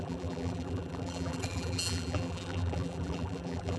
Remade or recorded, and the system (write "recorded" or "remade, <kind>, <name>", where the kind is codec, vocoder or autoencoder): remade, vocoder, BigVGAN v2